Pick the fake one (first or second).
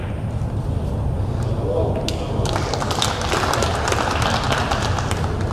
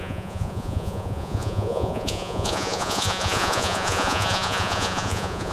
second